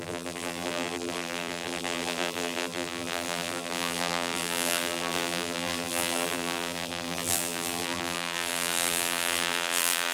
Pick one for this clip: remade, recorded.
remade